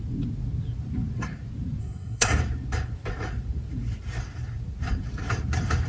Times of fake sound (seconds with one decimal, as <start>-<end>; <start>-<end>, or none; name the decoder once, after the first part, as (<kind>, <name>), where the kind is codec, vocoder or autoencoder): 1.8-2.4 (codec, SNAC)